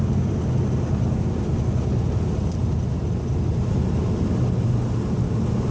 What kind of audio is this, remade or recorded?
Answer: recorded